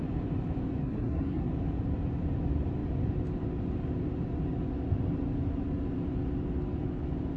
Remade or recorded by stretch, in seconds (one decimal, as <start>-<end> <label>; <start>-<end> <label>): 0.0-0.8 recorded; 0.8-1.5 remade; 1.5-7.4 recorded